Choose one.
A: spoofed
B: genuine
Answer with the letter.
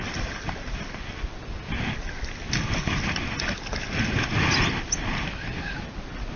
B